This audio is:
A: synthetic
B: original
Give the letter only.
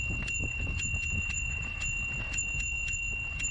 A